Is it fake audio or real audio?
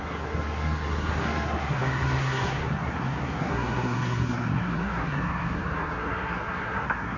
fake